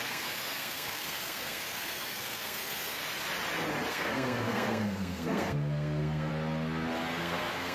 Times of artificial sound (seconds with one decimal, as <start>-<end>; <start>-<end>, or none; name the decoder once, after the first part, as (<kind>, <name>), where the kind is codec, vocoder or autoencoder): 0.0-3.0 (codec, SNAC); 3.9-6.3; 7.2-7.7